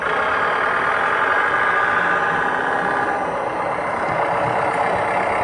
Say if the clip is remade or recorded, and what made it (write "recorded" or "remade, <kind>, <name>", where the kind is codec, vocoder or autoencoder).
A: recorded